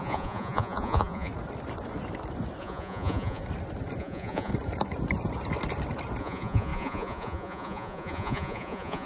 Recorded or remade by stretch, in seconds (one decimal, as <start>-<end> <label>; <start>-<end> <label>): 0.0-1.3 remade; 1.3-2.6 recorded; 2.6-3.4 remade; 3.4-4.0 recorded; 4.0-4.5 remade; 4.5-6.2 recorded; 6.2-9.1 remade